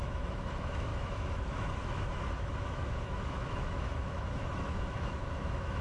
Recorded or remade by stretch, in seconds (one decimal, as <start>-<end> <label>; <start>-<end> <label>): 0.0-5.8 remade